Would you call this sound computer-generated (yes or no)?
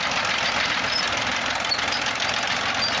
no